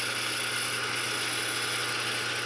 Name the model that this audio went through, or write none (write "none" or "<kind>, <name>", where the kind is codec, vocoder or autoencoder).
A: none